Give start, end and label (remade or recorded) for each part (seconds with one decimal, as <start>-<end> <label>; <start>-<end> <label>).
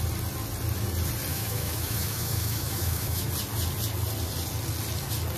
0.0-1.3 recorded; 1.3-3.3 remade; 3.3-5.4 recorded